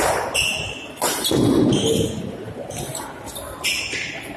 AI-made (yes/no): no